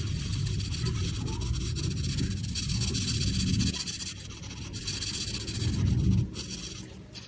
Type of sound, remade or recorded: recorded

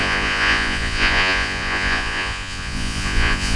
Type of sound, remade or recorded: remade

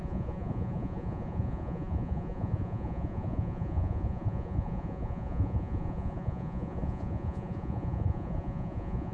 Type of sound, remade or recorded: remade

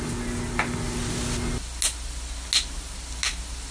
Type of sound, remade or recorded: recorded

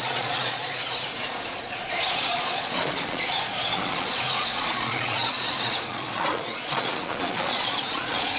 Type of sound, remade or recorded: remade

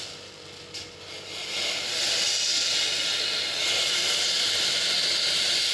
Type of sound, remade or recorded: recorded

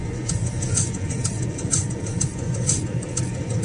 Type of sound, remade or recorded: remade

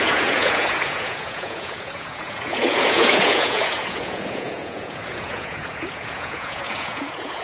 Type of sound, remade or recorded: remade